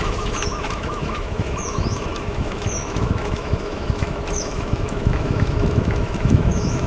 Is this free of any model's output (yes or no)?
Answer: no